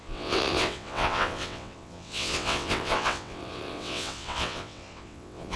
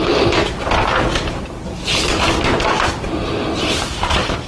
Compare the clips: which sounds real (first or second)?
second